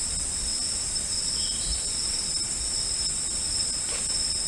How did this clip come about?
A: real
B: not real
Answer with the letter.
A